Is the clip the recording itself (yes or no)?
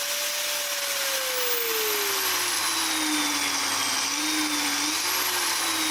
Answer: yes